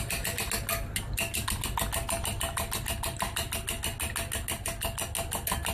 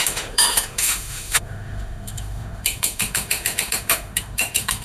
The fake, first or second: second